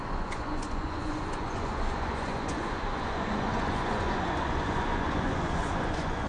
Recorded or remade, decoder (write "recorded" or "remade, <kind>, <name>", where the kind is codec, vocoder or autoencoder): remade, vocoder, Vocos